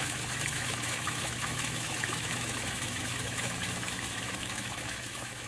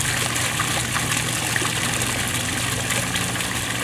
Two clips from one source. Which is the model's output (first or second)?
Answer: first